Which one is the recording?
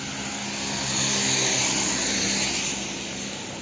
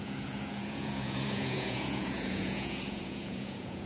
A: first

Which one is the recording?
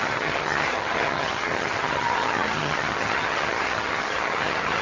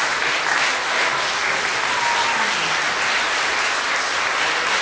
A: second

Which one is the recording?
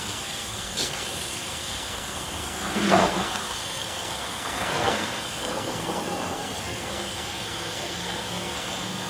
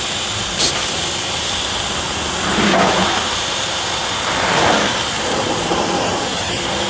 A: second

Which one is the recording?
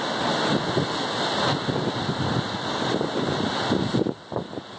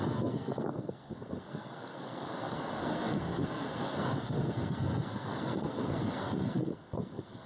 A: first